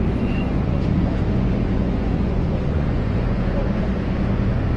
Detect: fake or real fake